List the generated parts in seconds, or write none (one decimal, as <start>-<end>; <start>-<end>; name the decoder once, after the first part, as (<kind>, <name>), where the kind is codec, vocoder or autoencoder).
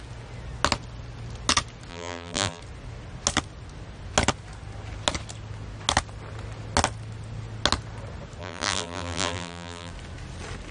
1.9-2.6 (vocoder, BigVGAN v2); 8.4-9.9